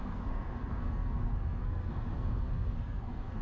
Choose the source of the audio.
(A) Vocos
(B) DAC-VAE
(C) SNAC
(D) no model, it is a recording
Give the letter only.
C